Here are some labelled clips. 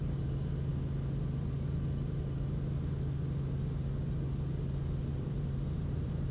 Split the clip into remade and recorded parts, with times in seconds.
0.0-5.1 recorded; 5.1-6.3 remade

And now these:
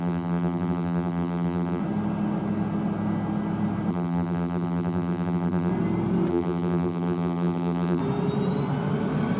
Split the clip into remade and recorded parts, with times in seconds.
0.0-1.8 remade; 1.8-3.9 recorded; 3.9-5.7 remade; 5.7-6.3 recorded; 6.3-8.0 remade; 8.0-9.4 recorded

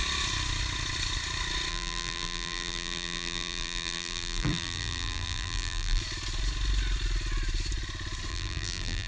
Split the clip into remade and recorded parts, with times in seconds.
0.0-1.7 recorded; 1.7-6.0 remade; 6.0-8.3 recorded; 8.3-9.1 remade

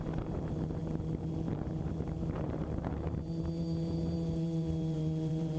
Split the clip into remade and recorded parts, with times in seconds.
0.0-5.6 remade

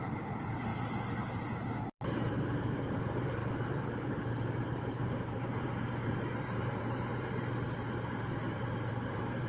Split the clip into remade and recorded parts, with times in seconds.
0.0-0.7 remade; 0.7-1.8 recorded; 1.8-3.4 remade; 3.4-4.1 recorded; 4.1-9.5 remade

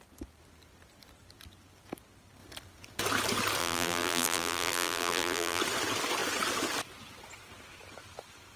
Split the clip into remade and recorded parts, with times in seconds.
0.0-3.6 recorded; 3.6-5.6 remade; 5.6-8.6 recorded

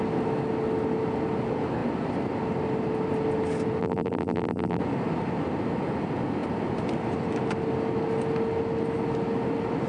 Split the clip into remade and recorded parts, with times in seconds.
0.0-3.8 recorded; 3.8-4.8 remade; 4.8-9.9 recorded